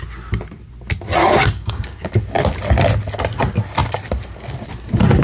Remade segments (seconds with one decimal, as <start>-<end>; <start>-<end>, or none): 1.2-2.1